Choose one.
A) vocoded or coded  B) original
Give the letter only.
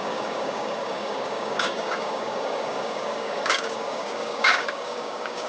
A